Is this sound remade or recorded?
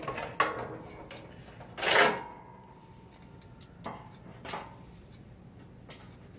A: recorded